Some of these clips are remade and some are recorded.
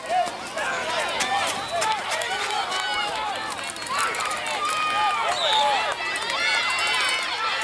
recorded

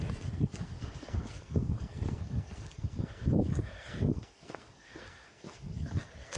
remade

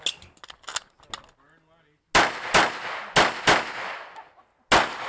recorded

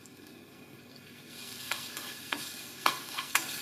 remade